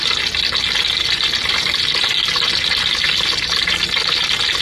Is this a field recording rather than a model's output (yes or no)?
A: yes